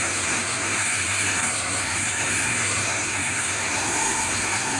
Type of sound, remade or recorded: remade